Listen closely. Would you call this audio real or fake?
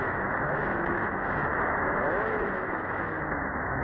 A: fake